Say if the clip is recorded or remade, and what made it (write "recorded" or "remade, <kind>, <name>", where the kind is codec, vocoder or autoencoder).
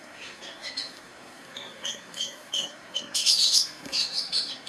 remade, codec, SNAC